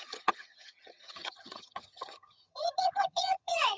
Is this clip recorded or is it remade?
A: remade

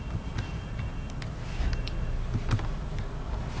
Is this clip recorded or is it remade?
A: recorded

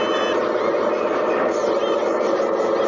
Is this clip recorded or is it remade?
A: recorded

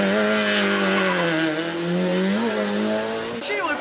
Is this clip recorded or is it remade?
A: recorded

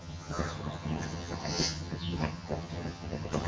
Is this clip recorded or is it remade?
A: remade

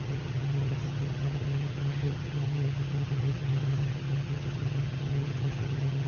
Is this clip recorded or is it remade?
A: remade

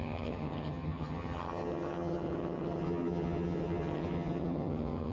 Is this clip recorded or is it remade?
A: remade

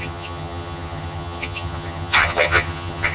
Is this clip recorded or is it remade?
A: remade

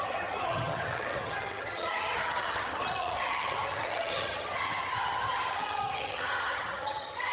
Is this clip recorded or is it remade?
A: remade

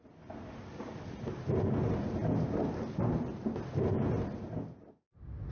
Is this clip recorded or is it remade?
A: recorded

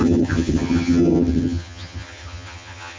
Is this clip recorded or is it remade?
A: remade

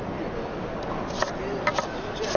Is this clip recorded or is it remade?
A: recorded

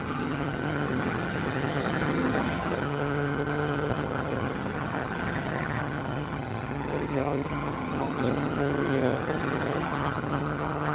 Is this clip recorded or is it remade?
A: remade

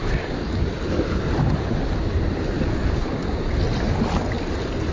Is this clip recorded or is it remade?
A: recorded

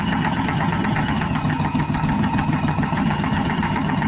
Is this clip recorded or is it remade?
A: remade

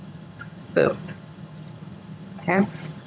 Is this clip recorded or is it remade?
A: remade